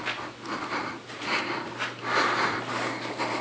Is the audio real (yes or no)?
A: yes